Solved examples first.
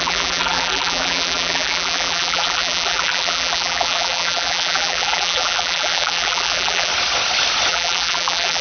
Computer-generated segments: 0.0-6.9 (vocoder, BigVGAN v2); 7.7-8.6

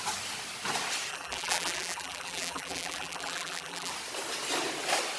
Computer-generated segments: 1.1-3.9 (vocoder, BigVGAN v2)

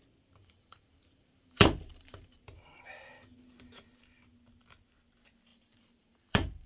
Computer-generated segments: 0.4-2.4 (vocoder, BigVGAN v2); 5.5-6.7